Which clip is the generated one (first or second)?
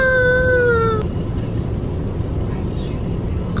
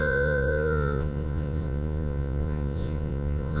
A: second